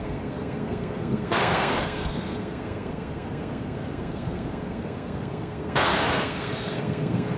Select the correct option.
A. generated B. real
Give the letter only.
A